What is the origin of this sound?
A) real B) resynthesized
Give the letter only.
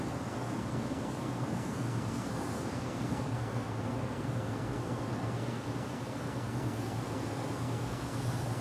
B